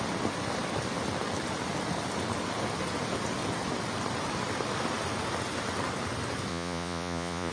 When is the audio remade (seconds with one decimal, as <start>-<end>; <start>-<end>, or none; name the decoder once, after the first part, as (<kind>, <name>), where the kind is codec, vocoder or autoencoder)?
6.5-7.5 (vocoder, Vocos)